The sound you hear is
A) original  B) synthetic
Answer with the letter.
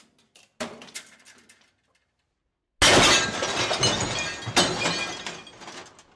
A